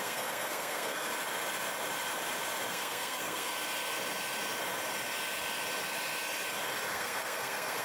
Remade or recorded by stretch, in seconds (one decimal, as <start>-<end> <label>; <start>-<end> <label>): 0.0-1.1 remade; 1.1-2.7 recorded; 2.7-3.5 remade; 3.5-6.9 recorded; 6.9-7.8 remade